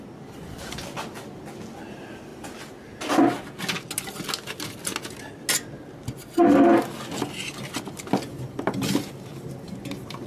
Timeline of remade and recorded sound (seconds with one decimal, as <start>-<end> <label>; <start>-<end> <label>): 0.0-10.3 recorded